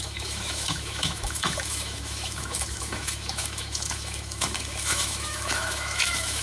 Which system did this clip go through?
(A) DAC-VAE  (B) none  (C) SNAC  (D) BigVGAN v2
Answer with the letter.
A